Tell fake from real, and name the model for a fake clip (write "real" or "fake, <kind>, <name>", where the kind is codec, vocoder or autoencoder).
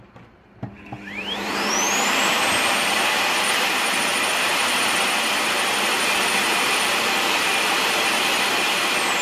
fake, vocoder, BigVGAN v2